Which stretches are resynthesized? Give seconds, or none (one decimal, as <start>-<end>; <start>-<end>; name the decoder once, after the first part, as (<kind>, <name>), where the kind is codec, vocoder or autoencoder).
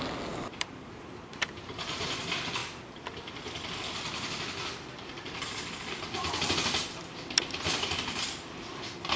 0.5-2.2 (vocoder, BigVGAN v2)